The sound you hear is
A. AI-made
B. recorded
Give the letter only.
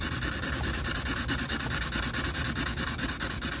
B